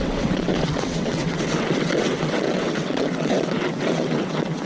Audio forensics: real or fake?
fake